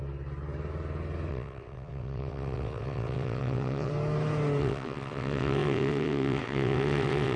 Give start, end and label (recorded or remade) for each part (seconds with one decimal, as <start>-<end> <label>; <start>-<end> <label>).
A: 0.0-1.3 recorded; 1.3-3.9 remade; 3.9-4.6 recorded; 4.6-7.4 remade